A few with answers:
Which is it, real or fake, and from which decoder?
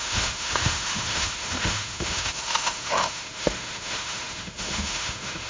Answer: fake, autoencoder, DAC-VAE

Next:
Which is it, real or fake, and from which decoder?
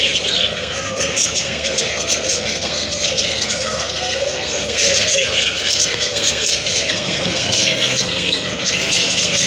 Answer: fake, codec, SNAC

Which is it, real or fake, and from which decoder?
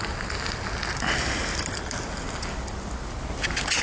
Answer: real